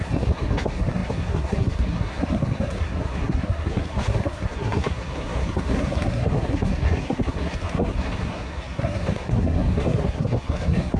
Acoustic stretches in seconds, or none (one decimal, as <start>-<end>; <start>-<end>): none